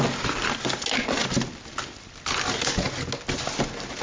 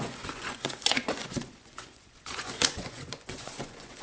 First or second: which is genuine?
first